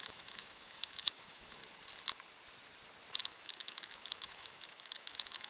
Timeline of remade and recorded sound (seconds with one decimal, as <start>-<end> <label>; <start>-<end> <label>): 0.0-1.6 remade; 1.6-3.1 recorded; 3.1-5.5 remade